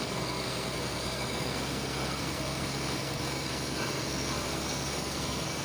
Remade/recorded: remade